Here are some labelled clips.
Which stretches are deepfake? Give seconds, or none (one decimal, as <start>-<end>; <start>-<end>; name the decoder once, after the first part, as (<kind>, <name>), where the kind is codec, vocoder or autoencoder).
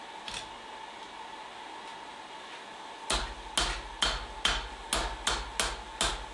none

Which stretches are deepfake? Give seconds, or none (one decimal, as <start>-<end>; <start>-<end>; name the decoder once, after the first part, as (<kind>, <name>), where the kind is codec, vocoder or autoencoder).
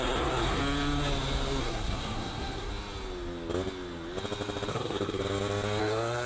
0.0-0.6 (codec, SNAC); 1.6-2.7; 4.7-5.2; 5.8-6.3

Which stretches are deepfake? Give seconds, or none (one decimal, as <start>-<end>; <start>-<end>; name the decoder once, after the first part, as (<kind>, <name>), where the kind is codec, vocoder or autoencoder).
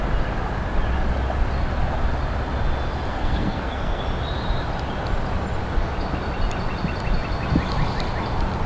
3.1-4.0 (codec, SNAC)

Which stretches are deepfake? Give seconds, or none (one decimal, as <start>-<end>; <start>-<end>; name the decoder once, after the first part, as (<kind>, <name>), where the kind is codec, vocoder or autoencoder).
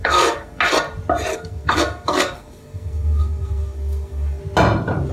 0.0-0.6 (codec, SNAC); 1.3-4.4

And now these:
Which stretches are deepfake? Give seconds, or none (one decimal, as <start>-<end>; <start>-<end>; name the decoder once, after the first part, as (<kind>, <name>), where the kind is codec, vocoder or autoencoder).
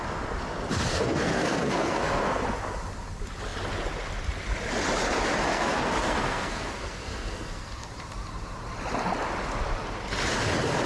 0.9-2.4 (codec, SNAC); 5.5-7.9